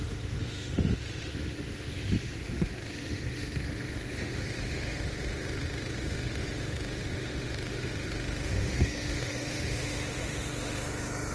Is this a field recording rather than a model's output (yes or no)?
no